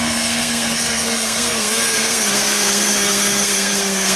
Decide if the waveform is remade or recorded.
remade